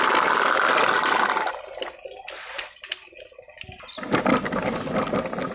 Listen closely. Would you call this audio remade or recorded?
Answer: recorded